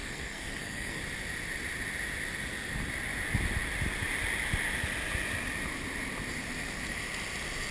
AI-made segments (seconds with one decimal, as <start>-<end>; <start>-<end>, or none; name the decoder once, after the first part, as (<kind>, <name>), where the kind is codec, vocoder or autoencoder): 0.0-1.0 (codec, SNAC)